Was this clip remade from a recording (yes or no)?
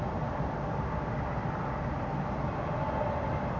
no